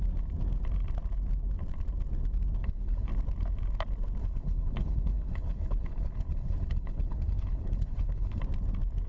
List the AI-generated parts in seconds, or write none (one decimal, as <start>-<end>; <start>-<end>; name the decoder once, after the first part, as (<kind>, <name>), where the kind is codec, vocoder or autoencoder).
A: 2.6-3.1 (codec, HILCodec); 4.2-8.4